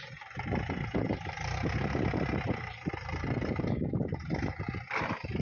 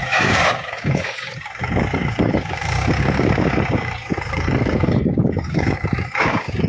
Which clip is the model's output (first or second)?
second